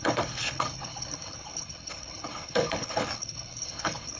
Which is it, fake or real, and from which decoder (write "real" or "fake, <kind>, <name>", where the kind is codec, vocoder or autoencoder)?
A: fake, codec, HILCodec